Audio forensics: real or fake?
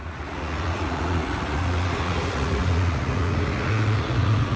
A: fake